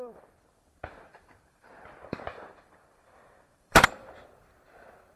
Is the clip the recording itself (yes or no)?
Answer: no